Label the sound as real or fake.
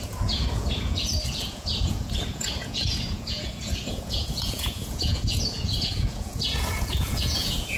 fake